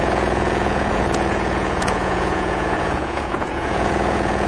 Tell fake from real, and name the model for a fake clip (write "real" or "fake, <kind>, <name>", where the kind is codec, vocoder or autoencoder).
fake, vocoder, Vocos